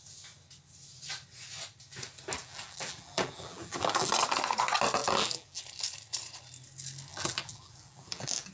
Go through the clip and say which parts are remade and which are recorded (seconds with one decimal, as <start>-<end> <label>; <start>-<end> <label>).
0.0-2.4 recorded; 2.4-4.1 remade; 4.1-5.0 recorded; 5.0-5.6 remade; 5.6-7.1 recorded; 7.1-8.5 remade